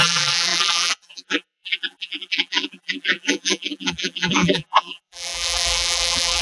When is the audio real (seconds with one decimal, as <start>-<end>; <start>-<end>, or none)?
none